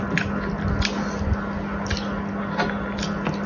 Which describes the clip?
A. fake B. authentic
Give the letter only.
B